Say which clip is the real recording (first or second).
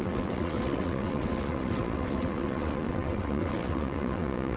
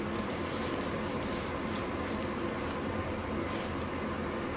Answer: second